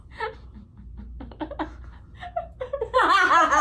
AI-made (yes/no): no